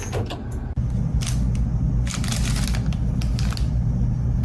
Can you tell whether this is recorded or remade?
recorded